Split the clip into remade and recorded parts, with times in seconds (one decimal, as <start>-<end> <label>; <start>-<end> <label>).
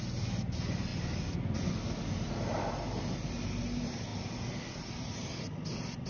0.0-6.1 recorded